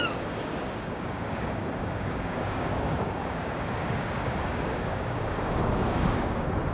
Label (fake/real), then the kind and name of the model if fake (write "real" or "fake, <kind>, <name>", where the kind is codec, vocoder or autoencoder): fake, codec, DAC